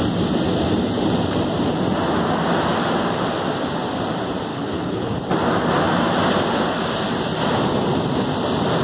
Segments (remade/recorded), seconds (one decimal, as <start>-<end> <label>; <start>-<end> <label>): 0.0-4.5 recorded; 4.5-5.2 remade; 5.2-8.8 recorded